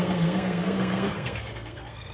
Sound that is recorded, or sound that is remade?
remade